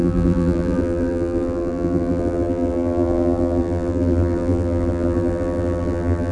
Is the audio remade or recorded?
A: remade